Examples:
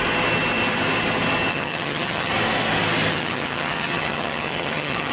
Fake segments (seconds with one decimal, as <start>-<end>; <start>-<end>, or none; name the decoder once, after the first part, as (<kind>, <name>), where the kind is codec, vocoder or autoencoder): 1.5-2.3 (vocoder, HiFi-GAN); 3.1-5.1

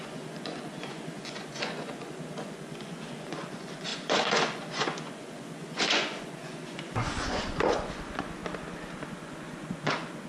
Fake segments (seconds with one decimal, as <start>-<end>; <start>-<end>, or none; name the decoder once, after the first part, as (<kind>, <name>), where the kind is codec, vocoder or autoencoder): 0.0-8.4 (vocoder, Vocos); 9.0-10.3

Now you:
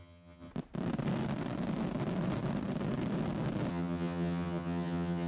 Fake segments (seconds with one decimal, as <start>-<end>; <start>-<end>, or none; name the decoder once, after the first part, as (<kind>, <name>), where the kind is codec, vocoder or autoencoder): 0.0-0.5 (vocoder, HiFi-GAN); 3.7-5.3

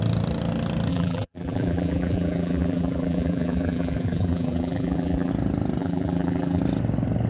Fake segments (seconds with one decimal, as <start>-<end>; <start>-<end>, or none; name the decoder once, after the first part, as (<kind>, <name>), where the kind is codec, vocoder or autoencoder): 0.9-5.3 (vocoder, BigVGAN v2); 5.8-6.6

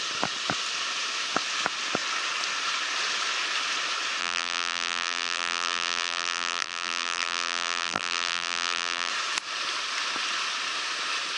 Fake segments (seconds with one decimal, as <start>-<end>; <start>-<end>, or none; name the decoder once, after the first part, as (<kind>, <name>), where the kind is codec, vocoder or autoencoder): 4.2-9.1 (vocoder, BigVGAN v2)

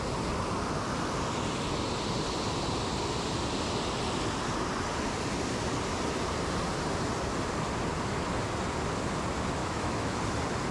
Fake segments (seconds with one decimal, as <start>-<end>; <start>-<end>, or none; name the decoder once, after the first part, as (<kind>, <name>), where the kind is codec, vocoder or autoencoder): 9.6-10.2 (autoencoder, DAC-VAE)

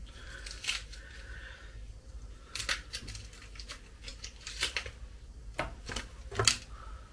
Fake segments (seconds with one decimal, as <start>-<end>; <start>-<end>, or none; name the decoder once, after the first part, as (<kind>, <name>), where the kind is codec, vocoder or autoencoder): none

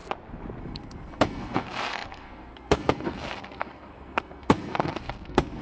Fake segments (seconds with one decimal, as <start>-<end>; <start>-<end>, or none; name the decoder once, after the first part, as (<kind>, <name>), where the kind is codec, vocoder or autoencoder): 0.6-5.6 (codec, SNAC)